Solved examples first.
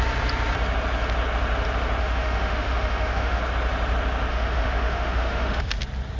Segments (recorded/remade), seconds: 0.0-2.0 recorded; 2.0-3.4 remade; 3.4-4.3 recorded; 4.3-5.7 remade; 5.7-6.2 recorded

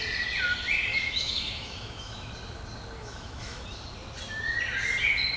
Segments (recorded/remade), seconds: 0.0-0.9 recorded; 0.9-2.3 remade; 2.3-3.0 recorded; 3.0-3.6 remade; 3.6-5.4 recorded

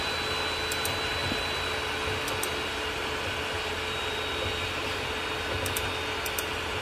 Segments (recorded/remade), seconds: 0.0-6.8 recorded

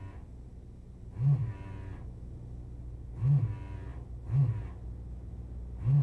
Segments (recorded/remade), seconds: 0.0-6.0 recorded

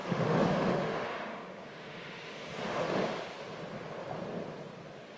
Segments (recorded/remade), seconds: 0.0-3.0 remade; 3.0-5.2 recorded

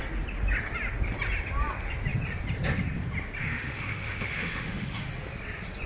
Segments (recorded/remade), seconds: 0.0-3.4 recorded; 3.4-5.1 remade; 5.1-5.9 recorded